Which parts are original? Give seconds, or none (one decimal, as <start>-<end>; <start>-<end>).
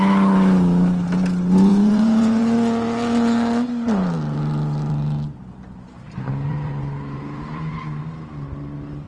0.0-1.7; 2.4-6.5; 8.0-9.1